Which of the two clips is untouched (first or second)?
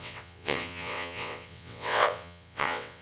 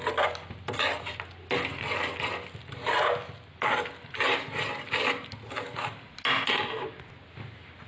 second